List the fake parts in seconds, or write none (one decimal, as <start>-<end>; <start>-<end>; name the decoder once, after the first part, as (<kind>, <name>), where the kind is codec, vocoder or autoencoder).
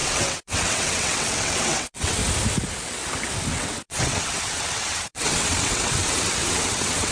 0.0-2.2 (vocoder, WaveNeXt); 3.5-7.1